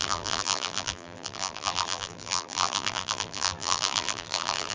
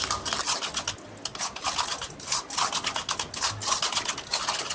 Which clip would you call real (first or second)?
second